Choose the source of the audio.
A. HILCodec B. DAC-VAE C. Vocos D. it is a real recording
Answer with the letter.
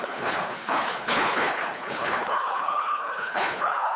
A